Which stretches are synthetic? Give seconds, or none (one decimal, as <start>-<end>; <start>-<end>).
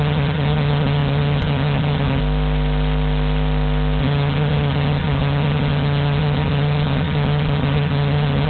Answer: 0.0-2.2; 4.0-8.5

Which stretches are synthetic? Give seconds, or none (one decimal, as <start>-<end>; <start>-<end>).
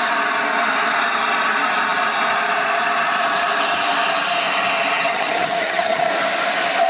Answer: 5.1-6.1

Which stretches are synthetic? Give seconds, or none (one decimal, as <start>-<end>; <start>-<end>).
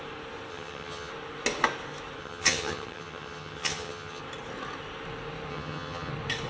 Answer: 0.5-1.1; 2.2-4.2; 5.5-6.1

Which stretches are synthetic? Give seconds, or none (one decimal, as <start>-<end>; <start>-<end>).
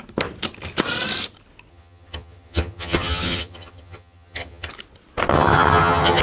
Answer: 1.7-4.7; 5.3-6.2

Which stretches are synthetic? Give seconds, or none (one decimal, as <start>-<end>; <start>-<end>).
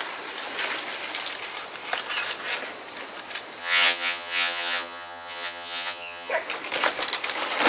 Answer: 3.6-6.3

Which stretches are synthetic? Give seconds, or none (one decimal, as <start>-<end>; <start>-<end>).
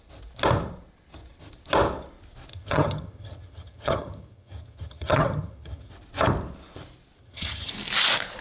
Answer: 2.5-5.9; 7.2-7.7